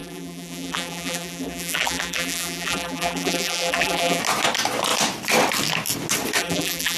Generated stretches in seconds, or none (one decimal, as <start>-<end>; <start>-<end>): 0.0-4.2; 6.4-7.0